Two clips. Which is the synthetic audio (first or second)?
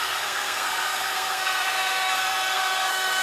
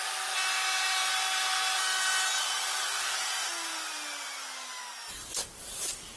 first